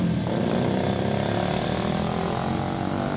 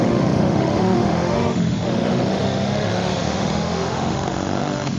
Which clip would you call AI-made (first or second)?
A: second